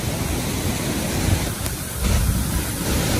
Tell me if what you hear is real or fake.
real